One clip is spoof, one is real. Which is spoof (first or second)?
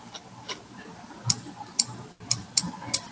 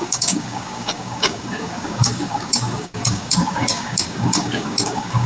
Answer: second